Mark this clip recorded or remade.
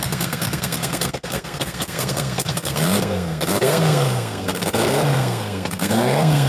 remade